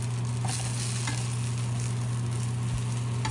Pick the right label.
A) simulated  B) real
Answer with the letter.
B